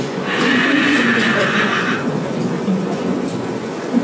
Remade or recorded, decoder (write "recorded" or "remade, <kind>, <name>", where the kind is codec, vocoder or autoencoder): remade, vocoder, Vocos